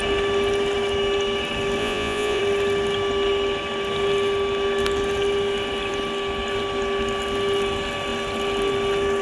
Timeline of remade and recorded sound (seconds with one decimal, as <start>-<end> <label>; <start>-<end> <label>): 0.0-1.8 recorded; 1.8-2.4 remade; 2.4-9.2 recorded